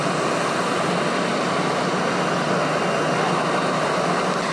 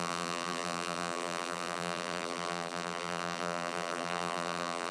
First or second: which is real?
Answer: first